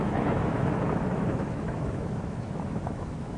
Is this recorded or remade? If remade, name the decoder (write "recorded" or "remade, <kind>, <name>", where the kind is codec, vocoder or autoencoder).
remade, autoencoder, DAC-VAE